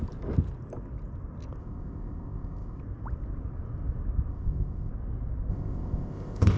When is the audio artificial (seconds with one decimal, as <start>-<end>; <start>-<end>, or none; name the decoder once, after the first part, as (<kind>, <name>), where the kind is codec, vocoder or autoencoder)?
1.6-2.8 (codec, ZipCodec); 4.3-4.9; 5.5-6.6